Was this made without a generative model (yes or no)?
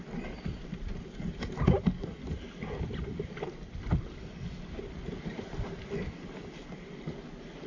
yes